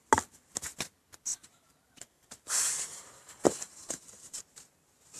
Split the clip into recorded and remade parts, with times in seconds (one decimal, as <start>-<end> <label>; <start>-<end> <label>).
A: 0.0-1.3 recorded; 1.3-4.4 remade; 4.4-5.2 recorded